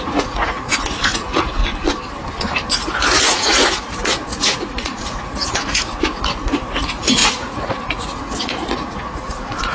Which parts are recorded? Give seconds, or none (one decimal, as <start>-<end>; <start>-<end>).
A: 1.6-2.7

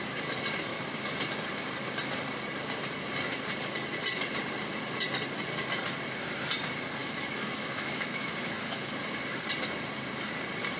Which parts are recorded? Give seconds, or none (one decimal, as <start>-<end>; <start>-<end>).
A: 0.0-7.0; 9.2-10.8

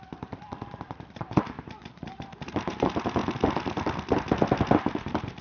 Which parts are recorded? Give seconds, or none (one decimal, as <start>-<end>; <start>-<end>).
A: 3.2-5.4

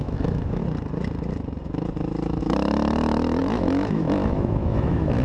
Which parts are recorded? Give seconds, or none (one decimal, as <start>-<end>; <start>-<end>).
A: 0.6-2.4

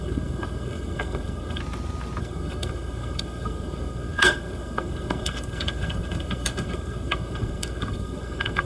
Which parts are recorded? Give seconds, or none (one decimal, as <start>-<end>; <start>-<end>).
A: 1.6-2.2

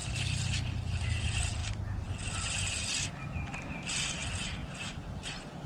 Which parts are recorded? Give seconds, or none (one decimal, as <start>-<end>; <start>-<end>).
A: 0.0-4.6

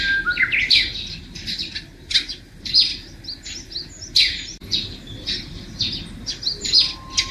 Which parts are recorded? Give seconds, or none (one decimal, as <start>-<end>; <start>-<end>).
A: 0.0-4.5; 5.6-7.3